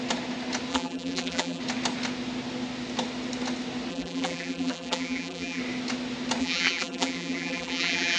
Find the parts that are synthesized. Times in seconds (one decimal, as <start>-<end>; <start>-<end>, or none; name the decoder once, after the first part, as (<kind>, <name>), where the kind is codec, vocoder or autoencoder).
0.7-1.6 (vocoder, BigVGAN v2); 3.9-5.6; 6.4-8.2